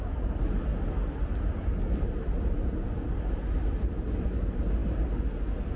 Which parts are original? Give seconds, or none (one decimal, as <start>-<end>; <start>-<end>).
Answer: 0.0-5.8